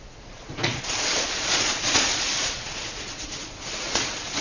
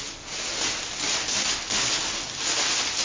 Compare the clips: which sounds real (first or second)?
second